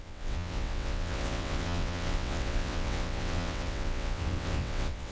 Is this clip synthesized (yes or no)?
yes